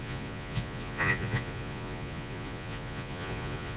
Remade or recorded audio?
remade